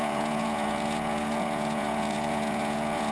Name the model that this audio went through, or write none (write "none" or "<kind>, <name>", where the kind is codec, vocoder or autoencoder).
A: vocoder, Vocos